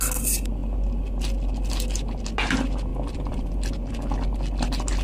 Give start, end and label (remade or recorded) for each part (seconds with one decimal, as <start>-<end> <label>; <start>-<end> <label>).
0.0-2.9 recorded; 2.9-3.5 remade; 3.5-5.0 recorded